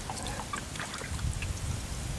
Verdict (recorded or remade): remade